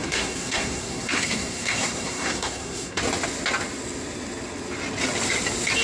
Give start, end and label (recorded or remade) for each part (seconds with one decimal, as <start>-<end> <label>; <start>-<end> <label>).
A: 0.0-3.0 remade; 3.0-5.8 recorded